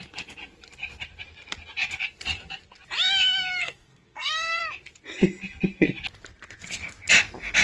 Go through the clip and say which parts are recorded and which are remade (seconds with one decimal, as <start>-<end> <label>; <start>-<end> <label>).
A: 0.0-3.6 recorded; 3.6-4.6 remade; 4.6-7.6 recorded